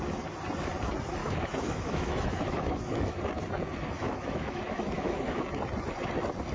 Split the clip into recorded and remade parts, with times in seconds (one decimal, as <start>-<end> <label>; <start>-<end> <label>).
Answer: 0.0-1.2 recorded; 1.2-3.2 remade; 3.2-4.0 recorded; 4.0-5.4 remade; 5.4-6.5 recorded